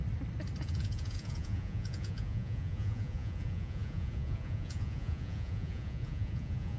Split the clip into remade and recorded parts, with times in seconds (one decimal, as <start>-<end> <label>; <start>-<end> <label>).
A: 0.0-0.6 recorded; 0.6-6.8 remade